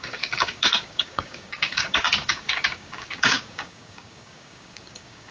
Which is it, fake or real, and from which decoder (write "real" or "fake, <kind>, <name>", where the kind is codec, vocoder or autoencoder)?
fake, codec, DAC